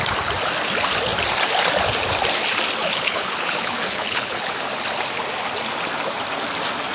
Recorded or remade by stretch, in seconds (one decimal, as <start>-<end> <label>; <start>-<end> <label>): 0.0-2.8 recorded; 2.8-4.5 remade; 4.5-6.9 recorded